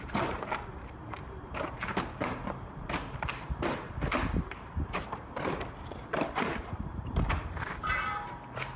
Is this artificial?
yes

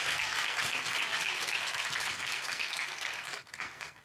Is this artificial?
yes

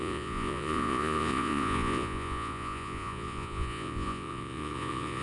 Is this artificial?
yes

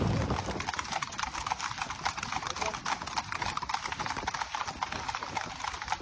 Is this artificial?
no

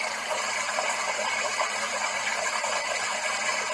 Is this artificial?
yes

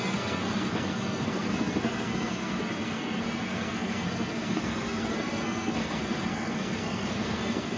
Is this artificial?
yes